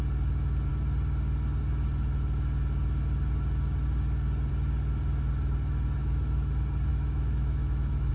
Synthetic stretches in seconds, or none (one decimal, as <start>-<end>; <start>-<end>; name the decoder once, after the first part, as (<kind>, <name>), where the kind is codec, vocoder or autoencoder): 6.0-6.5 (autoencoder, DAC-VAE); 6.9-8.1